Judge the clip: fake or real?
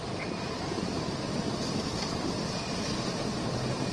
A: real